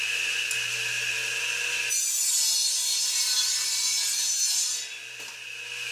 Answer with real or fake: real